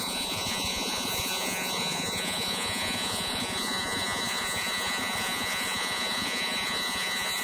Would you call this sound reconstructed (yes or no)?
yes